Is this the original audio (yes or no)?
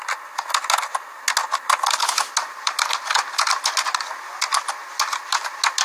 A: yes